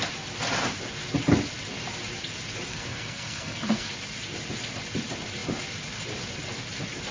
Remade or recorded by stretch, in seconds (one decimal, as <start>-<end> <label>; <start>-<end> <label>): 0.0-2.7 recorded; 2.7-3.9 remade; 3.9-7.1 recorded